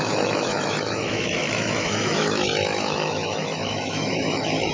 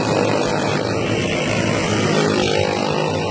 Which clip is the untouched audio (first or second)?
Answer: second